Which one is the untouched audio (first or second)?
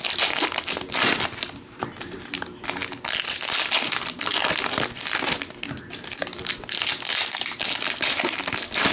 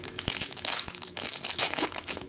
first